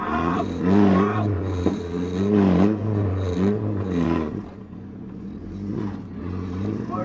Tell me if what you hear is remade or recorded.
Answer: remade